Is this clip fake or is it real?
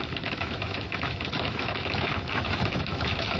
fake